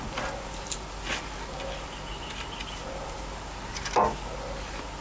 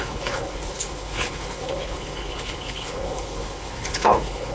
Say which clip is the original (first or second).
first